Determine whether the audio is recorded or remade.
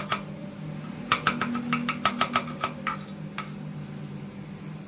recorded